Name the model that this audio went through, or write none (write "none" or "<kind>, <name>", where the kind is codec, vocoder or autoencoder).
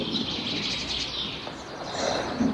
none